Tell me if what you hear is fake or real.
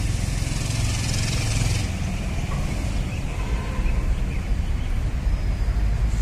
real